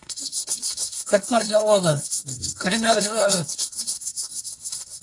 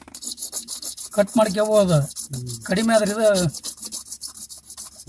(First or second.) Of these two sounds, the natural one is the second